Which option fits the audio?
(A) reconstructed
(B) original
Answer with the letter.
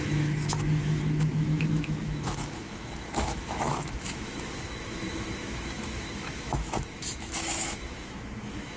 A